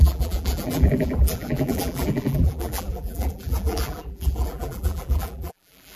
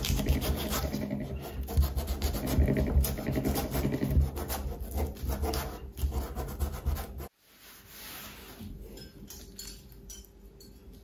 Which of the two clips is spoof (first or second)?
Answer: first